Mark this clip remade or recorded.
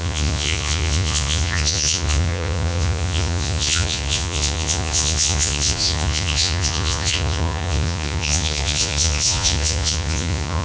remade